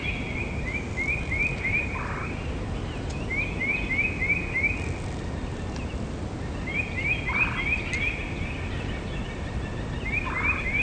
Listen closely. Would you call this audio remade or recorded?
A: recorded